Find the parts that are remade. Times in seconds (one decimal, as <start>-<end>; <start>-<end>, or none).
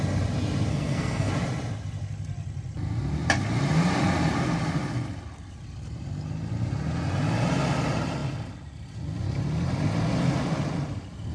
0.7-1.3